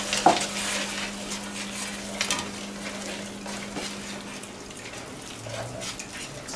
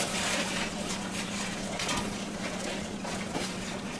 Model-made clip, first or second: second